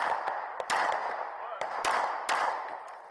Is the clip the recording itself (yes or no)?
yes